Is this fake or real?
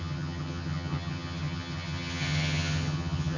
fake